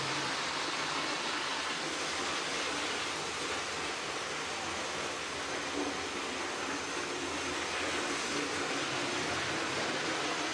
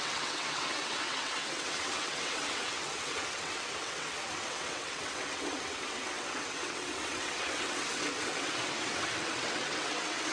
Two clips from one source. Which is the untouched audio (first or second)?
first